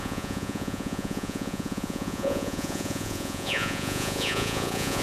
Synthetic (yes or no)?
yes